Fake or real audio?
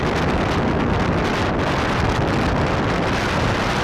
real